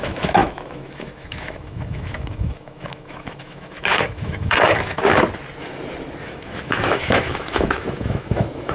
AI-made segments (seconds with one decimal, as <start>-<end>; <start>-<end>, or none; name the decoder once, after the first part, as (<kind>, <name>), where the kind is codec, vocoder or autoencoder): 0.0-5.1 (autoencoder, DAC-VAE); 6.2-8.7